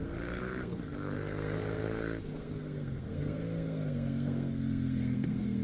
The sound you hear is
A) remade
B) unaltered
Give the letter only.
A